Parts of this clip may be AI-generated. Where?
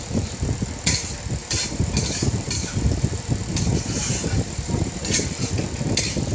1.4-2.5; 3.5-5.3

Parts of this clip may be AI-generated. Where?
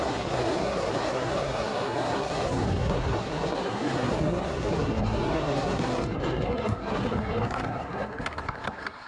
0.0-9.1